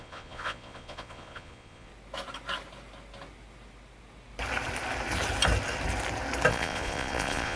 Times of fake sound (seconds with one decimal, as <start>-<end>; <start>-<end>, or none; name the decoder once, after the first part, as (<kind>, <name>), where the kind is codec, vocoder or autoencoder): 0.0-1.9 (vocoder, Vocos); 6.5-7.6